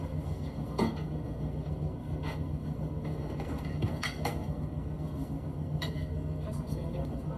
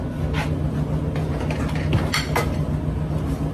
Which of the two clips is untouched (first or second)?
second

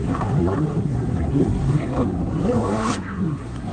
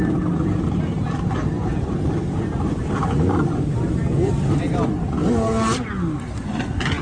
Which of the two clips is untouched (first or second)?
second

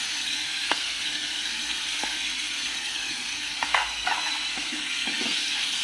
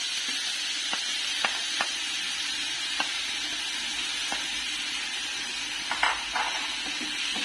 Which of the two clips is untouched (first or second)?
second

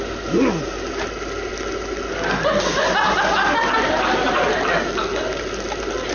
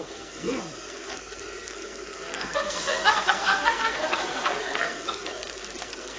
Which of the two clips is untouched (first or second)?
first